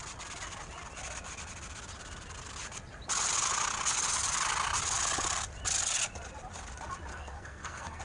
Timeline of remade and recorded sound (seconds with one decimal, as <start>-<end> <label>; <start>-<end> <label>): 0.0-7.1 recorded; 7.1-8.0 remade